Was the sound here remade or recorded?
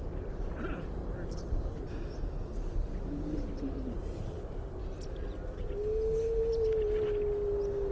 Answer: recorded